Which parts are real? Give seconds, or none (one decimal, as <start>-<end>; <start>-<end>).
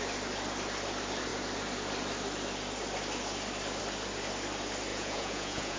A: 0.0-4.9